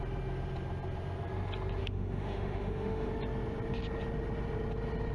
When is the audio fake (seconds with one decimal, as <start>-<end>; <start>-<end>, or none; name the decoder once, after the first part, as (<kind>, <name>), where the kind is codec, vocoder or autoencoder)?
1.8-3.1 (autoencoder, DAC-VAE)